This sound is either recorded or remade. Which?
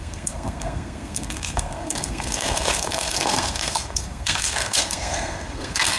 remade